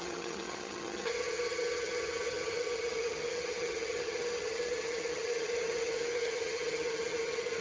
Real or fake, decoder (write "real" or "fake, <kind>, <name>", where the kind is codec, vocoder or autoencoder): fake, vocoder, HiFi-GAN